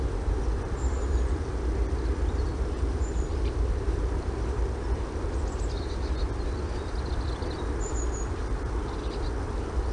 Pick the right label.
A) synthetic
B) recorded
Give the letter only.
A